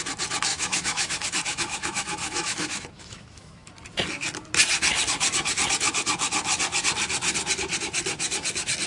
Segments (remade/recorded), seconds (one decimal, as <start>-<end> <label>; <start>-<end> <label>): 0.0-0.5 recorded; 0.5-3.7 remade; 3.7-8.9 recorded